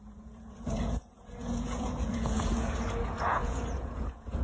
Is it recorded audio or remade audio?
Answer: remade